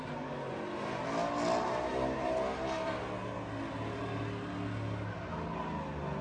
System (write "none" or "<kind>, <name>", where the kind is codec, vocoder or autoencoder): none